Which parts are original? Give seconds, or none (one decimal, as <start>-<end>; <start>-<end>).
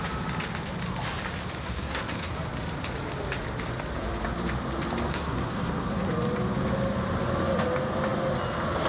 0.0-1.6; 2.3-5.1; 6.1-8.9